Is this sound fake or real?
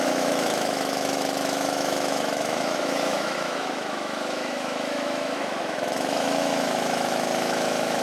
fake